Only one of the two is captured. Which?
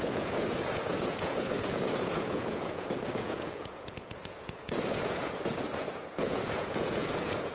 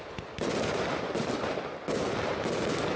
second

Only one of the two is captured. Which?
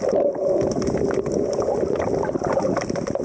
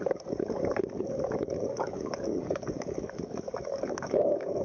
first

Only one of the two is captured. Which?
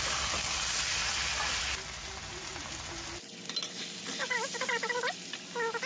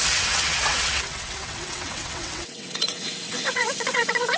first